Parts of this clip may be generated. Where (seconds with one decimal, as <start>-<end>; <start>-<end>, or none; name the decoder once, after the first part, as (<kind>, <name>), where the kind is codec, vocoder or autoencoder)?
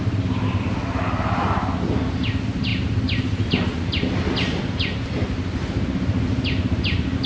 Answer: none